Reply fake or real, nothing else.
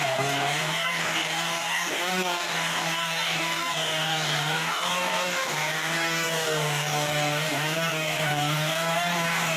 fake